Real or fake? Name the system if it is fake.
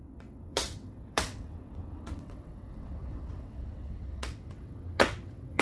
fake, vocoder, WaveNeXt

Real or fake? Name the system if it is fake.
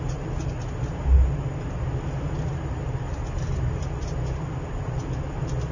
real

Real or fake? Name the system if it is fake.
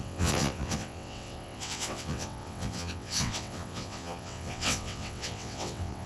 fake, vocoder, WaveNeXt